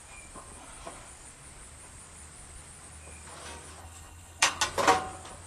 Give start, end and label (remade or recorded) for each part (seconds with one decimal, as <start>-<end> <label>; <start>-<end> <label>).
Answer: 0.0-3.8 recorded; 3.8-4.6 remade; 4.6-5.5 recorded